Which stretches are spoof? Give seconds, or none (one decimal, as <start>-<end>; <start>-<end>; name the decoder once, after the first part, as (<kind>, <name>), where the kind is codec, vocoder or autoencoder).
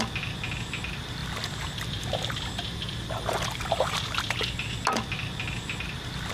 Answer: none